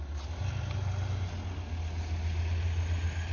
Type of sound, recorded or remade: recorded